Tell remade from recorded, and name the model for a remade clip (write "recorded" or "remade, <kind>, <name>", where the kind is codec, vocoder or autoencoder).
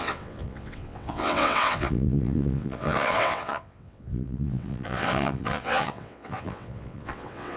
remade, vocoder, WaveNeXt